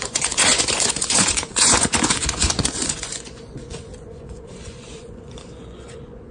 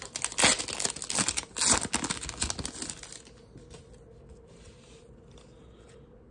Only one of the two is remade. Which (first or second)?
first